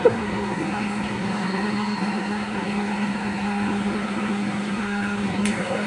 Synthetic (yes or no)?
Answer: yes